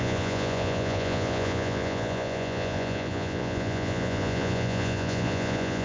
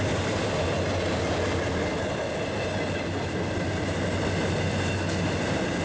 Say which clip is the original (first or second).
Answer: second